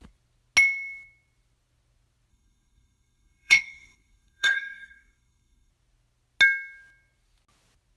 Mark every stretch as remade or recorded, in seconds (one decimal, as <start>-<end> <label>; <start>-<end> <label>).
0.0-2.3 recorded; 2.3-5.7 remade; 5.7-8.0 recorded